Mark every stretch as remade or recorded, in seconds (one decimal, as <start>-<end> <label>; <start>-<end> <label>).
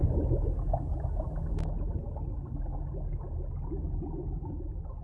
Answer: 0.0-5.0 recorded